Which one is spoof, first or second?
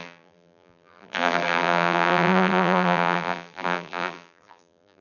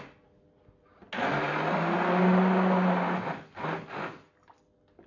first